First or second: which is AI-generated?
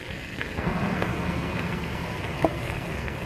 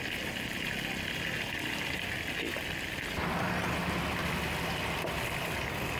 first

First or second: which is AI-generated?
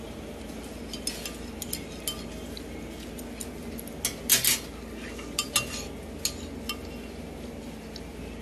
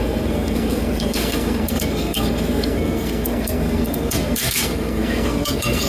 second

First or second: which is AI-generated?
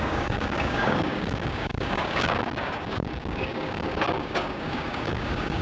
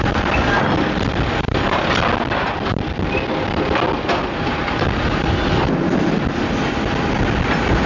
first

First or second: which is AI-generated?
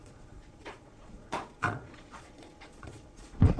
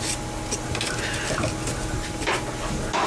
first